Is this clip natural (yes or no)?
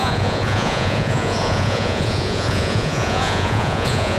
no